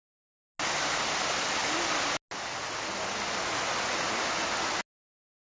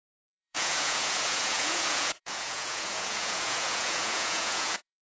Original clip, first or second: first